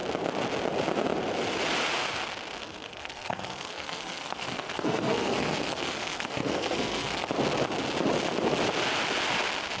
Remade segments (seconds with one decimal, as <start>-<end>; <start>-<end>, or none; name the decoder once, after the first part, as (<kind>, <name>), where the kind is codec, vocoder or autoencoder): 2.6-7.3 (codec, SNAC)